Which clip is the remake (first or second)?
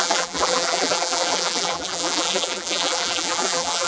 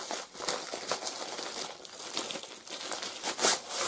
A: first